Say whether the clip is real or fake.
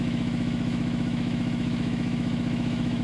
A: fake